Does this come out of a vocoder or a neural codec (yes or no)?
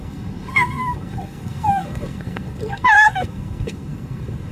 yes